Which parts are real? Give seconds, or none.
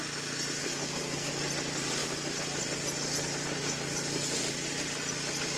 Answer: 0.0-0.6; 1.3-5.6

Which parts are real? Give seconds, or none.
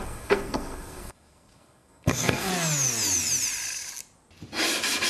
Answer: 2.5-5.1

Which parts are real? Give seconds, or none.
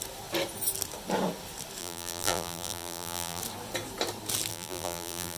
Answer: 0.0-1.8; 3.4-4.5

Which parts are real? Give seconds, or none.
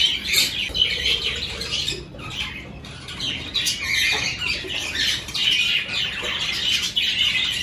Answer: 0.0-7.6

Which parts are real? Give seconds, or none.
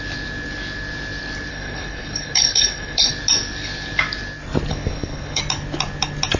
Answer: 0.0-1.5; 3.1-4.7; 5.4-6.4